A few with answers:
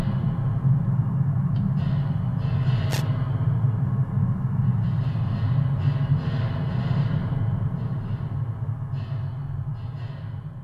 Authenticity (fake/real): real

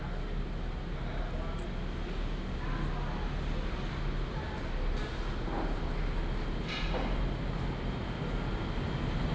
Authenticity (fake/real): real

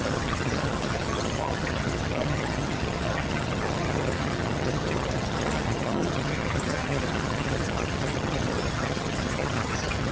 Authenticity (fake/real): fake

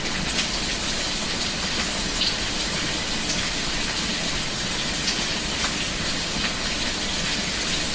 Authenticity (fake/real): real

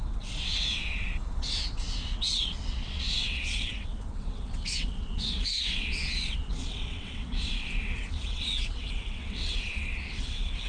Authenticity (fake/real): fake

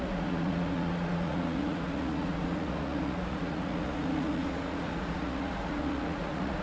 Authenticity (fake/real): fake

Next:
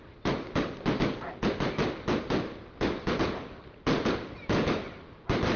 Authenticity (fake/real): real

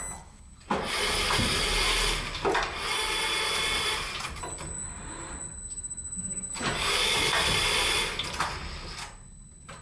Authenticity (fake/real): real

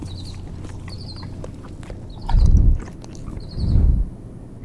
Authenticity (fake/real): real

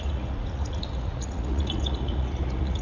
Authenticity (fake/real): fake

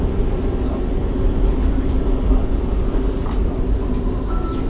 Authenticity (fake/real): real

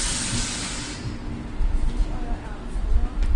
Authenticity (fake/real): real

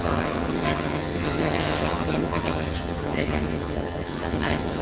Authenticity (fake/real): fake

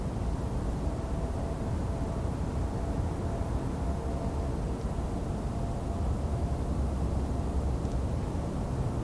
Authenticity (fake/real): real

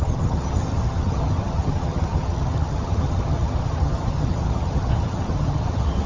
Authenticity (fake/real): fake